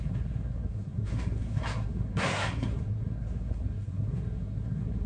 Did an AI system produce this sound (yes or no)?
yes